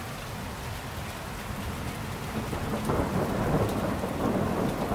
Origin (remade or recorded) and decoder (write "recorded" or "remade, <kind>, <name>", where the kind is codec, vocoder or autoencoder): recorded